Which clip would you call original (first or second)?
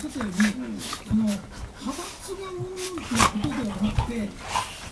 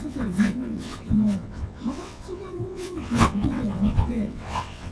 first